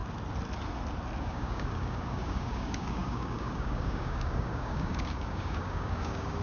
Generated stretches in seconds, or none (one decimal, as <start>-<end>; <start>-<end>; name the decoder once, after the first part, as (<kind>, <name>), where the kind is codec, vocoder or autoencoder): 1.2-6.4 (codec, DAC)